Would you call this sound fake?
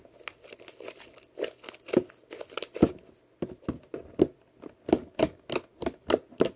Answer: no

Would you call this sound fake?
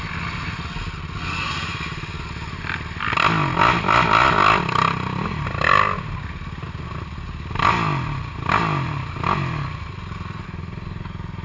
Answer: no